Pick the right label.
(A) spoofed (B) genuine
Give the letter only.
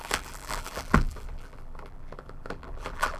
A